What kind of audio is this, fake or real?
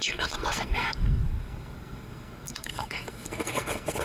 fake